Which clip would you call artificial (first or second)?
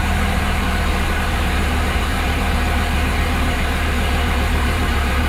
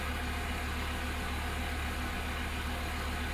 first